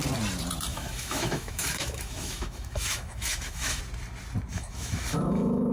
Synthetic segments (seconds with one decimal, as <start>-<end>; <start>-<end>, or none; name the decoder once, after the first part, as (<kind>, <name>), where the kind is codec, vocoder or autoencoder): 0.7-3.8 (autoencoder, DAC-VAE); 4.5-5.7